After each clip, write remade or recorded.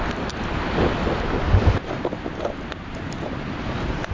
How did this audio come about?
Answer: recorded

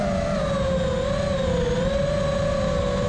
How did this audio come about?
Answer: recorded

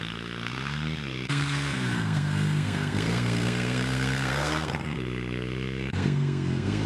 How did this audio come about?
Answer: remade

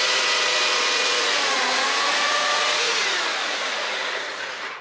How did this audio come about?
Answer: remade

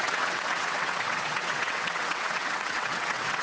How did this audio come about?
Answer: remade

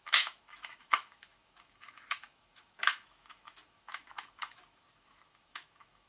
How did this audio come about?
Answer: remade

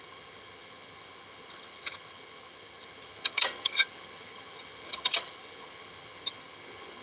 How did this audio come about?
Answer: remade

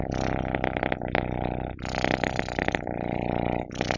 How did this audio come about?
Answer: recorded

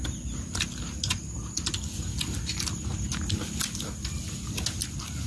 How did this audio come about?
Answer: recorded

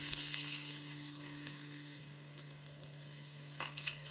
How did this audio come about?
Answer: remade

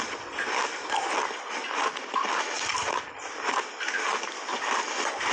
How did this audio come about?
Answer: recorded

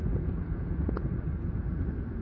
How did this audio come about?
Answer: remade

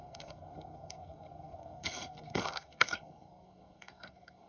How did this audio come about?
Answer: remade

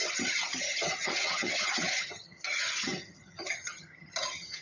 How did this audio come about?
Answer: remade